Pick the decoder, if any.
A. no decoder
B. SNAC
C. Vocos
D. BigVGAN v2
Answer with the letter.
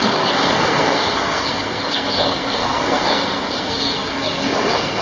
B